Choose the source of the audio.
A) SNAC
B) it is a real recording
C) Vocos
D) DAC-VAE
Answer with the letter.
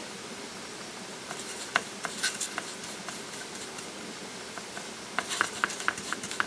B